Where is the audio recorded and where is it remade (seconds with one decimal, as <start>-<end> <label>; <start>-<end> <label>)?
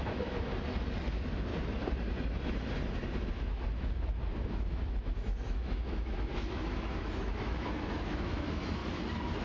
0.0-0.5 remade; 0.5-1.1 recorded; 1.1-1.5 remade; 1.5-3.3 recorded; 3.3-8.8 remade; 8.8-9.4 recorded